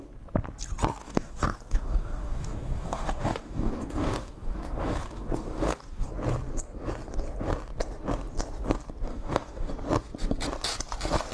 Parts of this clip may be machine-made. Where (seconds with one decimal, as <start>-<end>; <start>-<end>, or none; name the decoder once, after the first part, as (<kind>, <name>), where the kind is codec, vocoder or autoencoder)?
1.0-6.1 (codec, DAC); 9.1-9.7